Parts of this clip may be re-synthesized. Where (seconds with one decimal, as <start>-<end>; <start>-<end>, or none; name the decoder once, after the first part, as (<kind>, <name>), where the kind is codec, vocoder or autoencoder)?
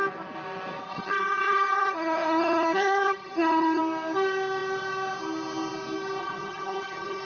0.9-3.8 (vocoder, HiFi-GAN); 6.2-7.2